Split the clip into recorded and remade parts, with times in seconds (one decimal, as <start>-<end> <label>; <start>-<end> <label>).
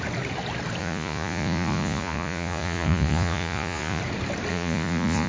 0.0-0.8 recorded; 0.8-4.0 remade; 4.0-4.5 recorded; 4.5-5.3 remade